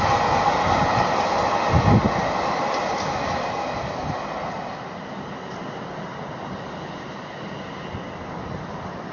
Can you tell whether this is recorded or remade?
recorded